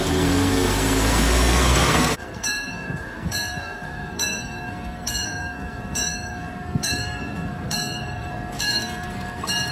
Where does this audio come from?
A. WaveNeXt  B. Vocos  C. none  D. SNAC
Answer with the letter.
D